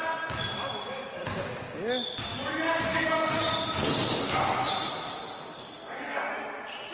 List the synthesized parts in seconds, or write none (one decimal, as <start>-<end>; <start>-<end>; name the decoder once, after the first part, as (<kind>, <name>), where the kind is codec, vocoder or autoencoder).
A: 2.9-3.5 (codec, SNAC); 5.5-6.3